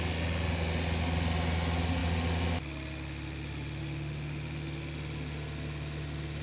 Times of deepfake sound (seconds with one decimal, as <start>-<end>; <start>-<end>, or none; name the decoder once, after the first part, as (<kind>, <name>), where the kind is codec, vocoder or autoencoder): none